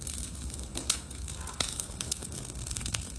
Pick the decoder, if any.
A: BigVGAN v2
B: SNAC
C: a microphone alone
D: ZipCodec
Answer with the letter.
B